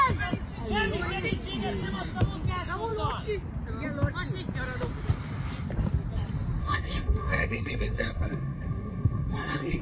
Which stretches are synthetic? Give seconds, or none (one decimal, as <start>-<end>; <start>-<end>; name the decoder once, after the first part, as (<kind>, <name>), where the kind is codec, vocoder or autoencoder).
6.6-9.8 (codec, SNAC)